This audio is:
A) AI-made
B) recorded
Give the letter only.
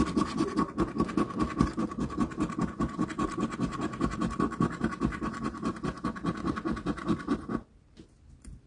B